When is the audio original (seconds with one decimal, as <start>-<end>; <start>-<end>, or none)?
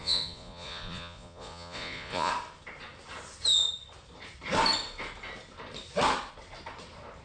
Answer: 2.3-7.2